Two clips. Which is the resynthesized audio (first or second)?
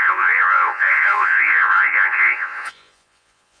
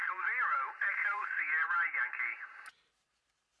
first